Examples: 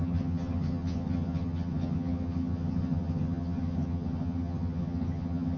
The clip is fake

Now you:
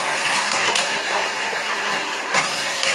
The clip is fake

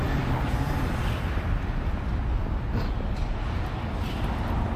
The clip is real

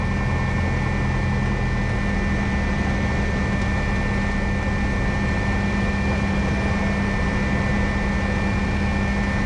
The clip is real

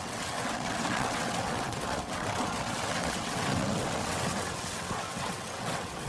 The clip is fake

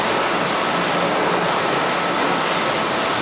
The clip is real